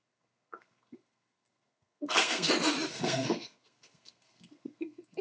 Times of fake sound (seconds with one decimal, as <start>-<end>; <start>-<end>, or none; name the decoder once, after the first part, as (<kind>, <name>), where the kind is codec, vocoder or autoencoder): 0.0-2.5 (codec, SNAC); 2.9-5.2